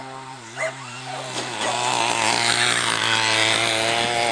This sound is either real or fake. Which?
real